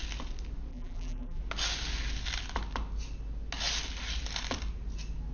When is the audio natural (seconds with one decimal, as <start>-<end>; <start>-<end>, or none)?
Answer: 0.0-0.7; 1.4-5.3